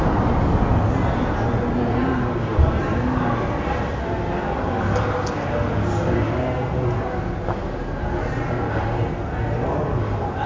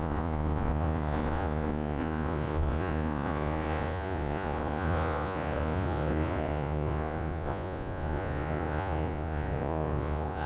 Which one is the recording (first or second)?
first